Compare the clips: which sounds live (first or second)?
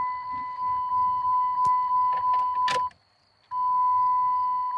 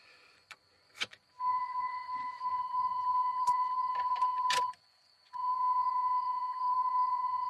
first